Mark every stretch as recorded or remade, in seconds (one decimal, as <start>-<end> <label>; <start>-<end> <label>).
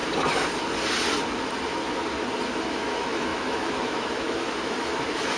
0.0-2.6 recorded; 2.6-5.4 remade